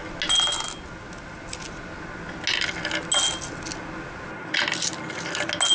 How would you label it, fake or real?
real